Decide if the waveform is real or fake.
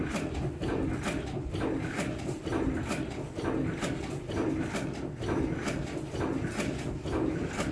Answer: real